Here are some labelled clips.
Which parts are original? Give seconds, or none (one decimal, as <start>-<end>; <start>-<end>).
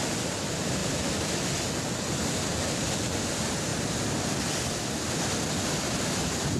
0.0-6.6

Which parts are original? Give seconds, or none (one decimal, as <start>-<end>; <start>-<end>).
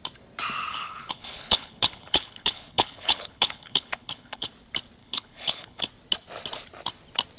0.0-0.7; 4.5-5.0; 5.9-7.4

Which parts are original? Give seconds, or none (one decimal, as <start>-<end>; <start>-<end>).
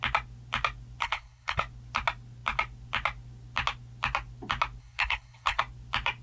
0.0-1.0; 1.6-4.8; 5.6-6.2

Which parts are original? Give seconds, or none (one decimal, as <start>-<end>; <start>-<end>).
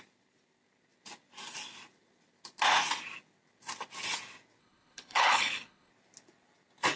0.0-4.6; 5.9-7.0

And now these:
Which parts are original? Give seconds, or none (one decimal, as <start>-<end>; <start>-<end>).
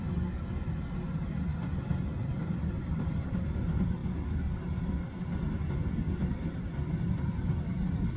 0.0-8.2